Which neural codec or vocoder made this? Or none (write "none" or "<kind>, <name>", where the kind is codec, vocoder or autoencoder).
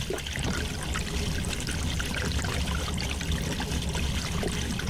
none